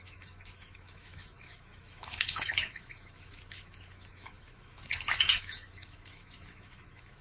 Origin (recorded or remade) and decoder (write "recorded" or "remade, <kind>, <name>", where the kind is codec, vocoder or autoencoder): remade, autoencoder, DAC-VAE